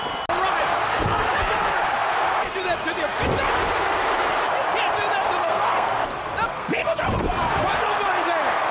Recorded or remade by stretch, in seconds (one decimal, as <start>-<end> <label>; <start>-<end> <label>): 0.0-5.4 recorded; 5.4-5.9 remade; 5.9-6.5 recorded; 6.5-7.0 remade; 7.0-8.7 recorded